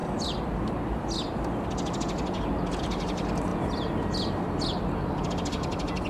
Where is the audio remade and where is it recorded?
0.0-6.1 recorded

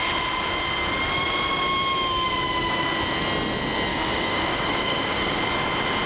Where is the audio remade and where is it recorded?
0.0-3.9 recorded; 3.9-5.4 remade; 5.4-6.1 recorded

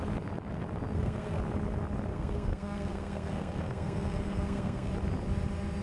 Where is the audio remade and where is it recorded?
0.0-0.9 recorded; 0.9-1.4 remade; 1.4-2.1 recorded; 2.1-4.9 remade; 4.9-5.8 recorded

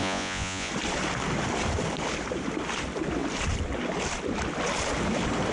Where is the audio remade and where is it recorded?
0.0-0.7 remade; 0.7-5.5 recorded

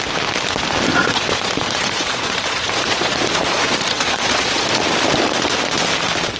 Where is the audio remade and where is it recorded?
0.0-1.0 recorded; 1.0-4.8 remade; 4.8-6.4 recorded